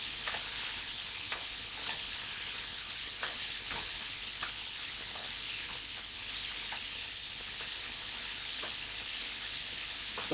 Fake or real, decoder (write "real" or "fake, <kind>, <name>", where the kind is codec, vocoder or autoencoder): fake, codec, HILCodec